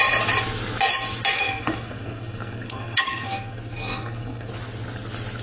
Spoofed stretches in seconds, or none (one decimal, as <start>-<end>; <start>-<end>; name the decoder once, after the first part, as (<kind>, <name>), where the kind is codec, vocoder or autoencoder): 1.3-4.5 (codec, SNAC)